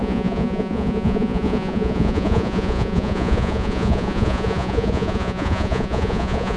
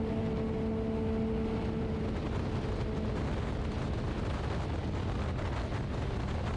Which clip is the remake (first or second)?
first